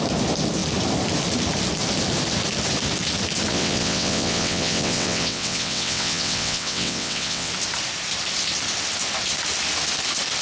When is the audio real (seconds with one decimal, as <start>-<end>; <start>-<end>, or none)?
0.0-3.5; 7.5-10.4

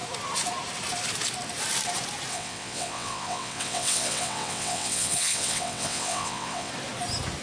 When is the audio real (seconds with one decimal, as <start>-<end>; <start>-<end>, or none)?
0.0-2.3; 6.7-7.4